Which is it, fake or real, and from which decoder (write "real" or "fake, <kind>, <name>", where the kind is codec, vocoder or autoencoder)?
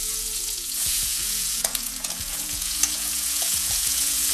fake, vocoder, Vocos